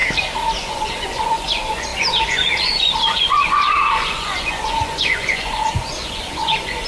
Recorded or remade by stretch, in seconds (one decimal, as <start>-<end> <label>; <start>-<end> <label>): 0.0-0.6 recorded; 0.6-6.9 remade